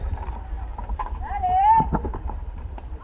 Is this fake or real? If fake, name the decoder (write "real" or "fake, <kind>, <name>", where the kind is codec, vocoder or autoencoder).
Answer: fake, vocoder, BigVGAN v2